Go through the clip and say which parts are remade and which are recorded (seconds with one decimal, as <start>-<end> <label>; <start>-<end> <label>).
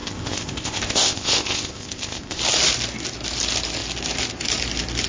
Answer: 0.0-2.4 remade; 2.4-5.1 recorded